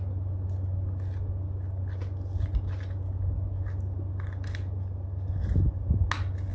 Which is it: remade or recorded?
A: recorded